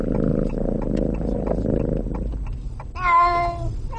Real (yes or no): yes